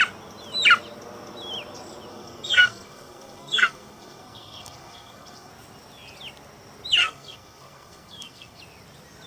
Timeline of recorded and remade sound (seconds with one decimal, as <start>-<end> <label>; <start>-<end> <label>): 0.0-2.1 recorded; 2.1-5.5 remade; 5.5-7.0 recorded; 7.0-8.6 remade; 8.6-9.3 recorded